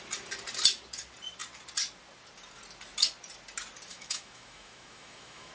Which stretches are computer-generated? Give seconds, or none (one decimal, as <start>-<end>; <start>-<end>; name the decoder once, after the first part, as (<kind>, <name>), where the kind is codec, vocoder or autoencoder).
3.9-5.5 (autoencoder, DAC-VAE)